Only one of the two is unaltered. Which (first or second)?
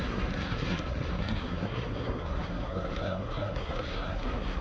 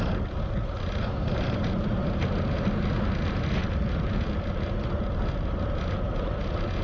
second